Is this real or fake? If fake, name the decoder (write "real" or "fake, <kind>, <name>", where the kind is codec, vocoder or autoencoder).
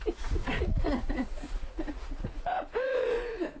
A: fake, vocoder, Vocos